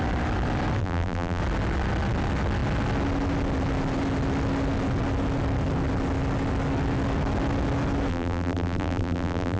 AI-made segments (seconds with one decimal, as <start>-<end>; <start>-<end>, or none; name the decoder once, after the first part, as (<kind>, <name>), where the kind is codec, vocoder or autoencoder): 0.8-1.4 (vocoder, BigVGAN v2); 8.1-9.6